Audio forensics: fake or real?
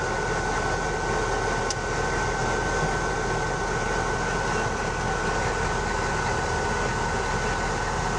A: real